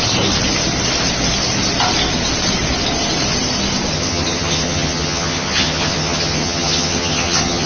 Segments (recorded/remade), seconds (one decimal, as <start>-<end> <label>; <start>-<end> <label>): 0.0-3.9 recorded; 3.9-7.7 remade